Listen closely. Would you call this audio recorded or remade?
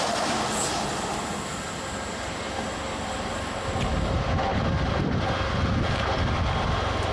recorded